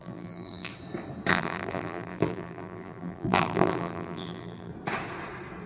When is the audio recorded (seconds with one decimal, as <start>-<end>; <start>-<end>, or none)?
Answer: 0.7-1.3; 4.7-5.7